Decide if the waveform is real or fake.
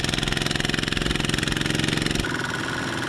real